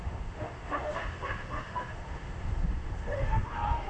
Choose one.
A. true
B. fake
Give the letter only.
B